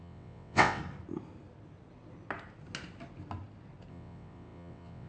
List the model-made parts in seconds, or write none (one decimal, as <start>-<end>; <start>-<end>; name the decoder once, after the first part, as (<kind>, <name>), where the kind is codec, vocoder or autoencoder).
0.0-0.8 (vocoder, WaveNeXt); 3.9-5.1